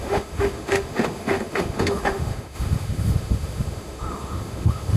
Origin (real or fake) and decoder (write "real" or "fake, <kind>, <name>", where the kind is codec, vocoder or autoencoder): fake, autoencoder, DAC-VAE